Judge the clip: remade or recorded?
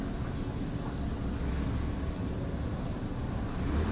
recorded